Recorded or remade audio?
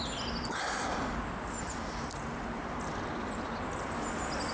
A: recorded